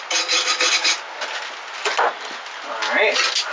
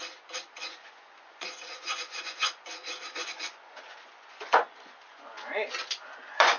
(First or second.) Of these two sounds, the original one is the first